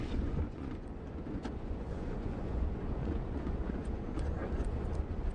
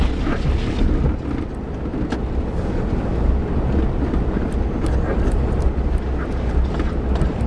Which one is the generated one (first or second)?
first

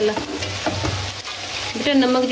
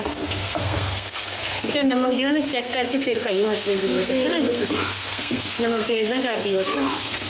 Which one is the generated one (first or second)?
second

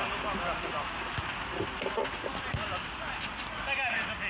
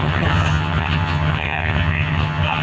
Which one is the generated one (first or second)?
second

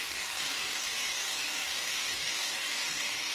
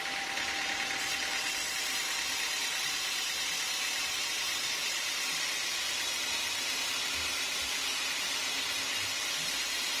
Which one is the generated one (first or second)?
first